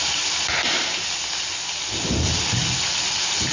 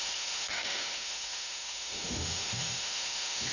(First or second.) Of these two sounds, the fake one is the second